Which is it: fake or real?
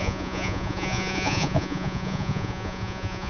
fake